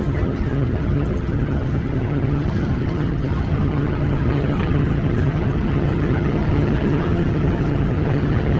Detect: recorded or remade remade